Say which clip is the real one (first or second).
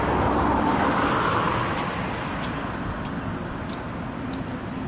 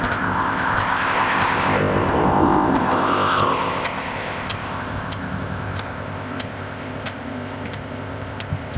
first